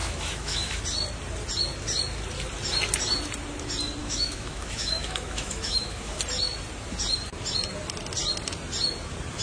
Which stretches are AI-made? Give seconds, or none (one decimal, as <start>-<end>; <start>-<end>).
0.0-0.8; 4.0-6.2